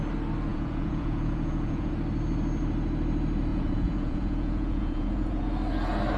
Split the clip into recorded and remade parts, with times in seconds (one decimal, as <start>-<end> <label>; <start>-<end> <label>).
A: 0.0-0.5 recorded; 0.5-1.9 remade; 1.9-3.5 recorded; 3.5-5.4 remade; 5.4-6.2 recorded